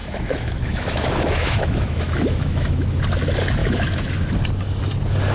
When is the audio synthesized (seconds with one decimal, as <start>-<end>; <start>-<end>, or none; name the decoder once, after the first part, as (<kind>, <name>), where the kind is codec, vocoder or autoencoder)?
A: 0.0-3.0 (autoencoder, DAC-VAE); 3.6-4.3